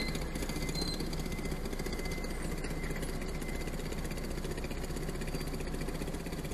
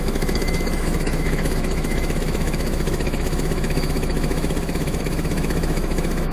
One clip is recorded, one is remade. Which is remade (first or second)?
second